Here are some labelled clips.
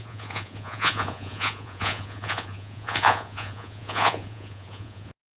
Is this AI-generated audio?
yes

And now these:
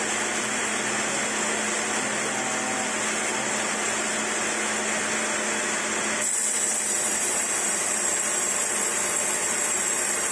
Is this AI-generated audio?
no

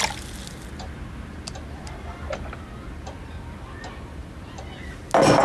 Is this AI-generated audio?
no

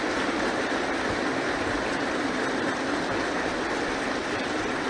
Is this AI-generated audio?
no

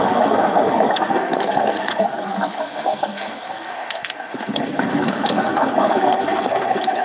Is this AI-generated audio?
yes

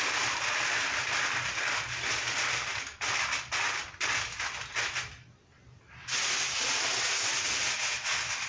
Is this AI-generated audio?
no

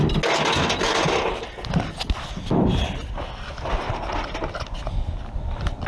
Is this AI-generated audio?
no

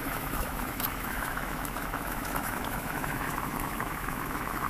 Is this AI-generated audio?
yes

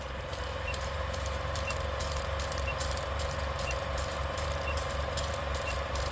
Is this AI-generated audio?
yes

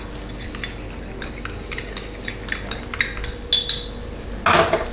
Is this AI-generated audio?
no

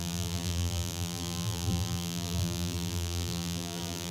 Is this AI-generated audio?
yes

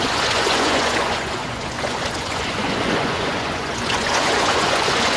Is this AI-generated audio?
yes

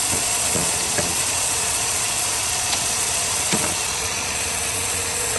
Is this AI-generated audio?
yes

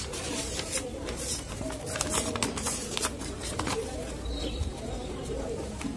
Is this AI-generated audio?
yes